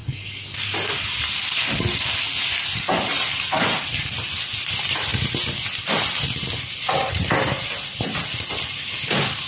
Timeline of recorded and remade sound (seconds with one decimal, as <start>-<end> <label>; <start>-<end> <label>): 0.0-9.5 recorded